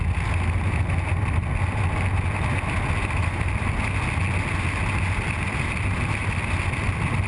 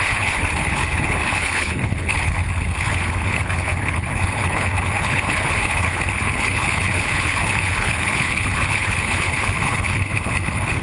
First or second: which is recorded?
first